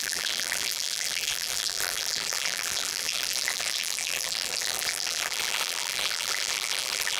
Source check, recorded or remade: remade